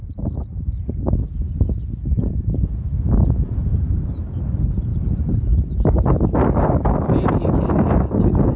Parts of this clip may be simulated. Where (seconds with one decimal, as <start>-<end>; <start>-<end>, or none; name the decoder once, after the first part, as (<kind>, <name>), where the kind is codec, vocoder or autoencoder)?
0.5-1.1 (vocoder, BigVGAN v2); 4.9-6.9